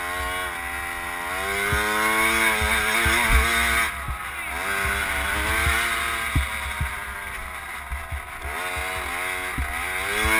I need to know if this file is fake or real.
real